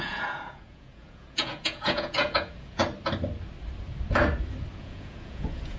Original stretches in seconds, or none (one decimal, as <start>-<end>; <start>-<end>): 2.8-4.8